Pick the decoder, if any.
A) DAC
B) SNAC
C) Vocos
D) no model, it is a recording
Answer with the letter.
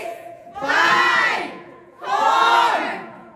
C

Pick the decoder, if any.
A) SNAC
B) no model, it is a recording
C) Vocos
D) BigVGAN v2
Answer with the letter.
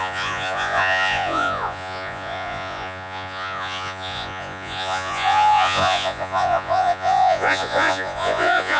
C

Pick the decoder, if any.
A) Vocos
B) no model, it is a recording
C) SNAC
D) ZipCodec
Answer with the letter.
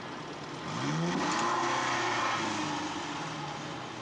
B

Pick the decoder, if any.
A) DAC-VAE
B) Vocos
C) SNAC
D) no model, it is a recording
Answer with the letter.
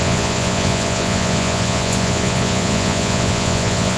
B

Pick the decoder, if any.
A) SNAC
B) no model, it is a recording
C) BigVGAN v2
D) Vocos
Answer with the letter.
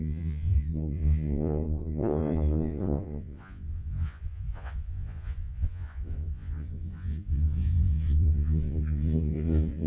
D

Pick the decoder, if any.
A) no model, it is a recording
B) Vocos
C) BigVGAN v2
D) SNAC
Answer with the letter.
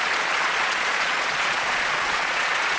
B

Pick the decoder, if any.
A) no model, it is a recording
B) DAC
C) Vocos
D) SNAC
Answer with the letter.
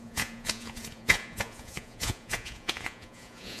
C